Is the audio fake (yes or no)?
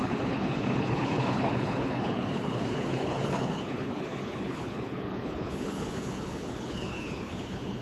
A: yes